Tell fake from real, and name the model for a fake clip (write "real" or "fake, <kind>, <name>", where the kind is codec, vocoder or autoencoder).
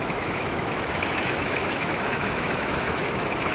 fake, autoencoder, DAC-VAE